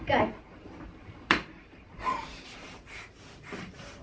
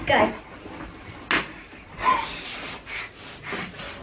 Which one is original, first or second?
second